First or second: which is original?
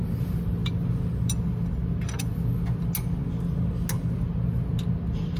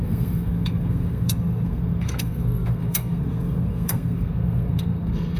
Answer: first